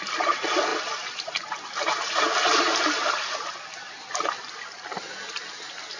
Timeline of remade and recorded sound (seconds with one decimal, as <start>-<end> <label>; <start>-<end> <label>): 0.0-6.0 recorded